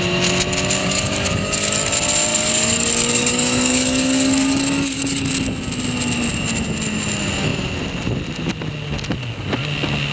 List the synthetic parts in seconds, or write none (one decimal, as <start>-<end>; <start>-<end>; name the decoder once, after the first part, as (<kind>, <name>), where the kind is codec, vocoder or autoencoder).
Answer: 0.8-1.9 (codec, DAC); 2.3-5.3

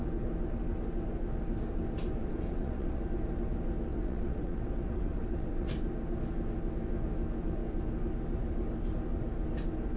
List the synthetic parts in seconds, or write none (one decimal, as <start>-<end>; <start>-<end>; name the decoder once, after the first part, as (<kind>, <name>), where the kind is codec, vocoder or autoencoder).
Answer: 2.2-3.0 (vocoder, WaveNeXt); 3.9-5.8

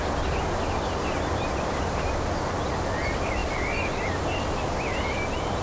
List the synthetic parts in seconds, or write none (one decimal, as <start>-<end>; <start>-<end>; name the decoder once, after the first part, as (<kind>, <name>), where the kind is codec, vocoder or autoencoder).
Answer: none

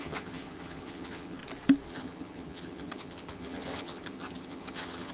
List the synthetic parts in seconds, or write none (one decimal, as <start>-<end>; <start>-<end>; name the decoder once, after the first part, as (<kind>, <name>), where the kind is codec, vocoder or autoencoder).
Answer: 0.0-1.4 (vocoder, HiFi-GAN); 1.9-5.1

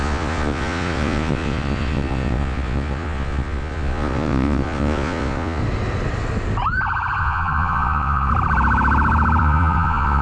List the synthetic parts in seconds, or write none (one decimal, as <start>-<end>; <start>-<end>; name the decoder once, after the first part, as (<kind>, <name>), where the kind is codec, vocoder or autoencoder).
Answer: 0.0-5.6 (vocoder, Vocos); 7.2-8.3; 9.4-10.2